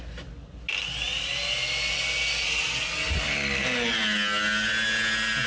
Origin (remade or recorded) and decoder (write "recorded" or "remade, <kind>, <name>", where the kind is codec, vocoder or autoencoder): recorded